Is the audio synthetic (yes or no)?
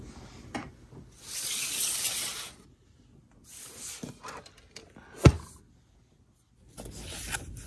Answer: no